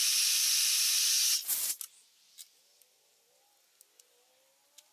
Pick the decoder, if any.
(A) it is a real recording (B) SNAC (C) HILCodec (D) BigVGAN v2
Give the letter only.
A